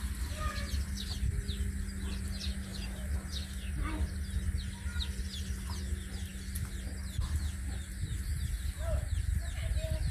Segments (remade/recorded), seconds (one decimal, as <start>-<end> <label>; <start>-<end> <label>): 0.0-10.1 recorded